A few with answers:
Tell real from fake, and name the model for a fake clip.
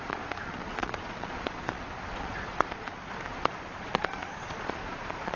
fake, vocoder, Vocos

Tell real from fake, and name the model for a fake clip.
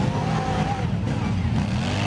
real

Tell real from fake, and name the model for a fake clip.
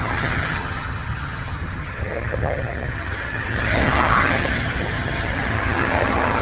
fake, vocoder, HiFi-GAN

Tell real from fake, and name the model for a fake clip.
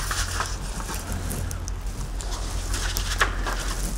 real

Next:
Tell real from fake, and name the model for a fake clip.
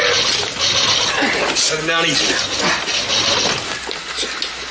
real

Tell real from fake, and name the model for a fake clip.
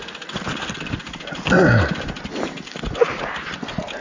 real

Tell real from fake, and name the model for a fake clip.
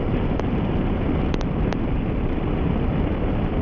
real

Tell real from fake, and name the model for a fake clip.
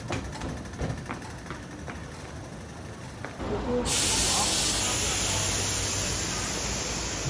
real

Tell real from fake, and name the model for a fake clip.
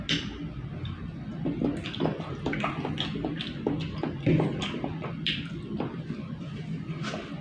real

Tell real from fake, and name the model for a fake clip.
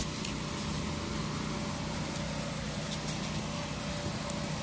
real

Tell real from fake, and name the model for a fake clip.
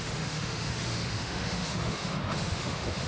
fake, autoencoder, DAC-VAE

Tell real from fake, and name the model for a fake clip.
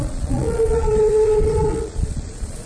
fake, vocoder, Vocos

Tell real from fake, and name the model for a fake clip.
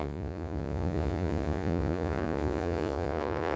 fake, vocoder, Vocos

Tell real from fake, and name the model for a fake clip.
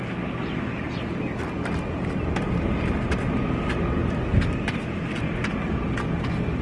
real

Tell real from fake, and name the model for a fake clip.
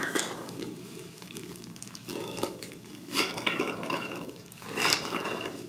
fake, codec, DAC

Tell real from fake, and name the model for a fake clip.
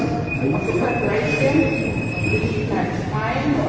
real